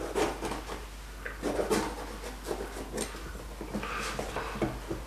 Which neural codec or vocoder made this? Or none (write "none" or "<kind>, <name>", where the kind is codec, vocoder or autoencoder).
none